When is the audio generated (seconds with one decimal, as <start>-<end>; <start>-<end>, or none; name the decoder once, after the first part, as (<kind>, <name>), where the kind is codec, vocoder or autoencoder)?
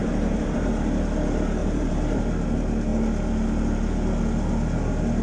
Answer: 0.0-0.7 (vocoder, BigVGAN v2); 1.6-2.2